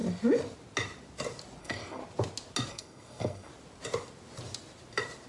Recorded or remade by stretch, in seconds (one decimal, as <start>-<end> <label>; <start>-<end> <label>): 0.0-1.6 recorded; 1.6-2.0 remade; 2.0-2.7 recorded; 2.7-3.5 remade; 3.5-5.3 recorded